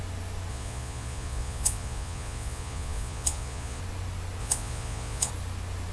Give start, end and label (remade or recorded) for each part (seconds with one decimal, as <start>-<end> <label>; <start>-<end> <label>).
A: 0.0-0.5 recorded; 0.5-3.8 remade; 3.8-4.4 recorded; 4.4-5.3 remade; 5.3-5.9 recorded